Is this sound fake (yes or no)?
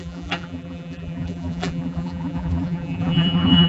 yes